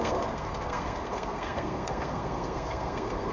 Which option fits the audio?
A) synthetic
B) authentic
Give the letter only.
A